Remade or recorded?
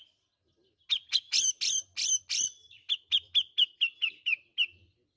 recorded